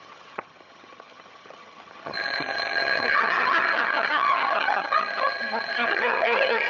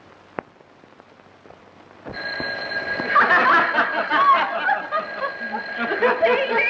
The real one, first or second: second